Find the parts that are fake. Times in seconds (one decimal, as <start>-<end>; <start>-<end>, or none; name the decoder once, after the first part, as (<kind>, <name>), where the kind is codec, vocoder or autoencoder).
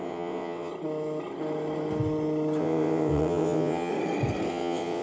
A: 0.0-0.7 (vocoder, WaveNeXt); 2.6-3.9; 4.5-5.0